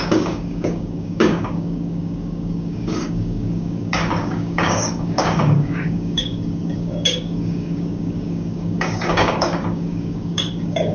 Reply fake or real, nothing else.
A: fake